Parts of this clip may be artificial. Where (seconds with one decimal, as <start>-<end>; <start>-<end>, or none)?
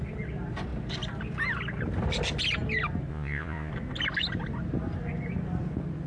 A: 3.1-3.7